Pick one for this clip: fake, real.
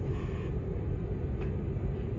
real